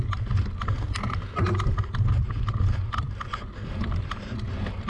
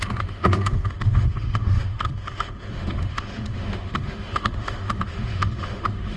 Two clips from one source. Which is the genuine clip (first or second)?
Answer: first